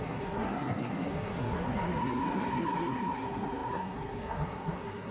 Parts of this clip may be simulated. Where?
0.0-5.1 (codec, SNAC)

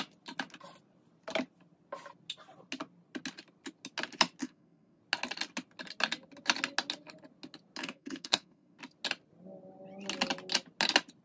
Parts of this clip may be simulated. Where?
4.4-5.0 (codec, SNAC); 7.8-8.8

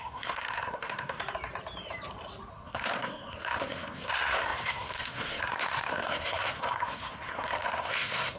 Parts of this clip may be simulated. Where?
0.0-1.2 (codec, SNAC); 2.5-8.4

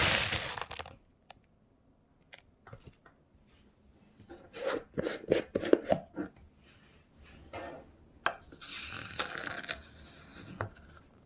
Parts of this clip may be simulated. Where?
none

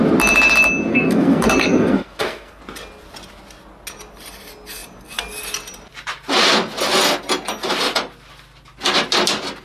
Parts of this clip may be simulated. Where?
0.9-2.6 (codec, SNAC)

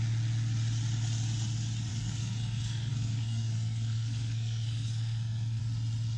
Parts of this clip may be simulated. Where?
1.9-5.6 (codec, SNAC)